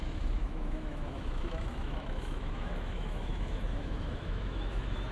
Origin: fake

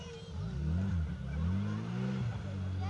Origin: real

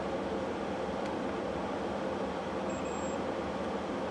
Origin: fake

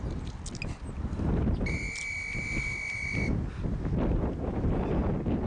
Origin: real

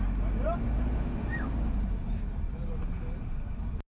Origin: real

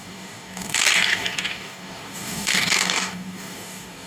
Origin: fake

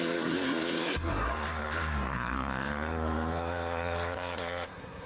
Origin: fake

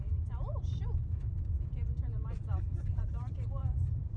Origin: fake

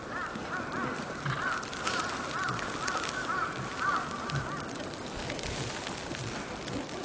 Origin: real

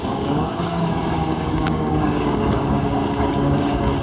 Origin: fake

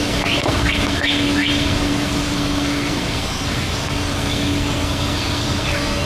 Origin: fake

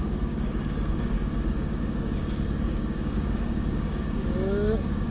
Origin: fake